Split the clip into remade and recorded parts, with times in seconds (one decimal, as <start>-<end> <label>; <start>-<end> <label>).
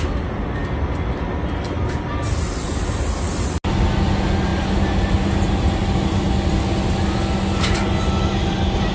0.0-8.9 recorded